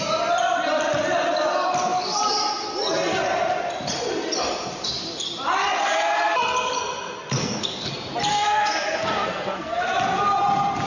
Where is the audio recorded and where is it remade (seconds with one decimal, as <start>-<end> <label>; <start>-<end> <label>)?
0.0-7.4 recorded; 7.4-7.9 remade; 7.9-8.3 recorded; 8.3-9.9 remade; 9.9-10.9 recorded